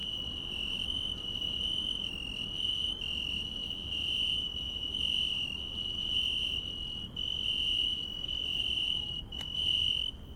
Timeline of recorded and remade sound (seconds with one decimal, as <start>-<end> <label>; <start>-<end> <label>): 0.0-8.5 recorded; 8.5-9.4 remade; 9.4-10.4 recorded